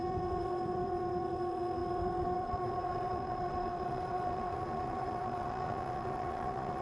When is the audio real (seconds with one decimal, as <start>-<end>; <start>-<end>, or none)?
none